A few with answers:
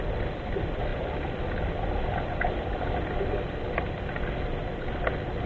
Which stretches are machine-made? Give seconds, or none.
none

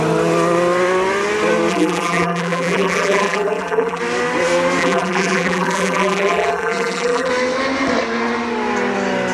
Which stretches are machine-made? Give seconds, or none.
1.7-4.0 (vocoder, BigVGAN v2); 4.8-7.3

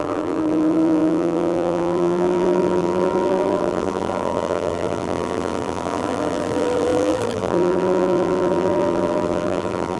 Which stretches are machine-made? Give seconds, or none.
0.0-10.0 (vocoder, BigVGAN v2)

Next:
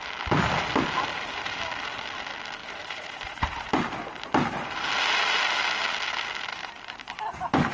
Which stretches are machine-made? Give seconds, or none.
2.6-3.7 (vocoder, BigVGAN v2); 6.5-7.3

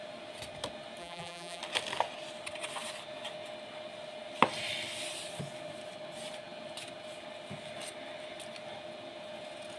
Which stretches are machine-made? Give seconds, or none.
1.0-1.6 (vocoder, BigVGAN v2)

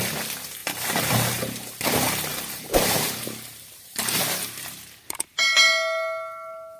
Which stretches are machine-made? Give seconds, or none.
0.6-1.8 (vocoder, BigVGAN v2); 2.3-4.2